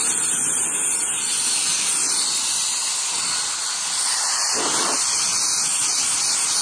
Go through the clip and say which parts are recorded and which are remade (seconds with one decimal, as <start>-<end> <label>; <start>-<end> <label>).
0.0-6.6 recorded